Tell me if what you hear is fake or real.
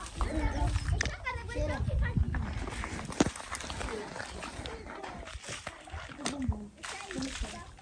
real